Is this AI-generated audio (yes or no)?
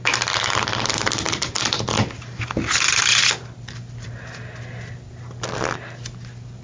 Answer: no